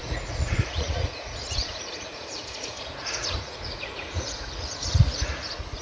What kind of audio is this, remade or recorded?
remade